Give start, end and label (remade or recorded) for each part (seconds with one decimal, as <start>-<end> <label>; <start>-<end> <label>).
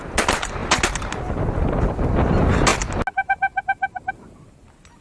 0.0-5.0 recorded